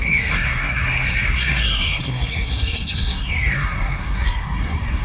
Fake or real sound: fake